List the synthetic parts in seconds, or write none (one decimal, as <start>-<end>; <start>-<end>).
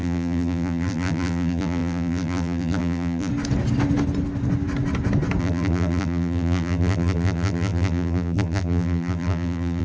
0.0-3.3; 5.4-9.8